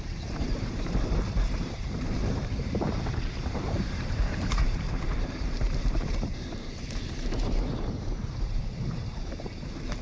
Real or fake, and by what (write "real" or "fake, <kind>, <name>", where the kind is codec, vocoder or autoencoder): fake, vocoder, BigVGAN v2